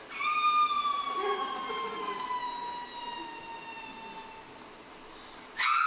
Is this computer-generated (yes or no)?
no